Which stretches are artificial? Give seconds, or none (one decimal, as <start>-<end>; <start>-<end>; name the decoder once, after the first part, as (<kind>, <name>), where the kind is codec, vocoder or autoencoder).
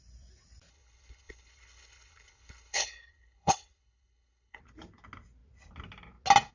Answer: 0.7-4.6 (codec, HILCodec)